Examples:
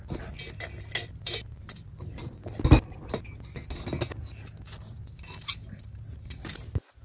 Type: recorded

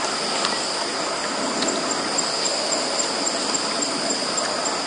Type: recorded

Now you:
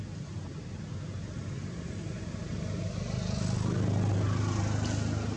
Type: recorded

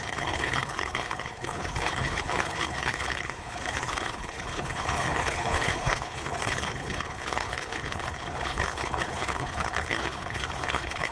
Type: remade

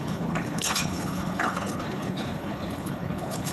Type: remade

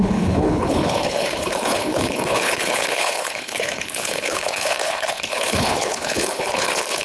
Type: remade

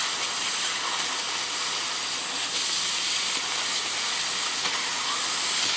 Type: recorded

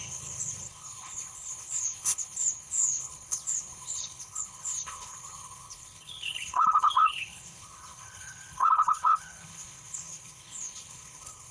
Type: remade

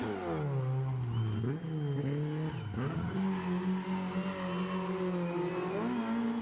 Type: recorded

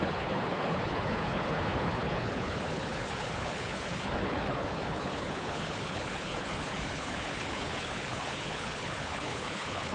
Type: remade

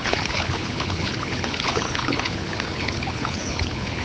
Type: remade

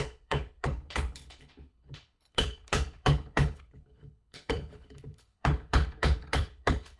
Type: remade